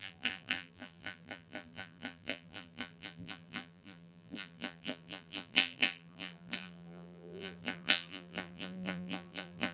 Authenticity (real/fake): fake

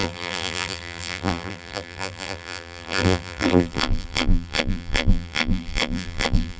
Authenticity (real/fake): fake